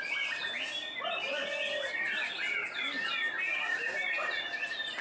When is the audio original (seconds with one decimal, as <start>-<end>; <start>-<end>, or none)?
0.0-5.0